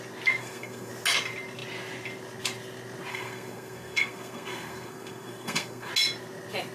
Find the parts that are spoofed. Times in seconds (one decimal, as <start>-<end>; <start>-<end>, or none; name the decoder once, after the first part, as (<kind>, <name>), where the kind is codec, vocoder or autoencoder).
0.4-0.9 (codec, SNAC); 3.1-5.9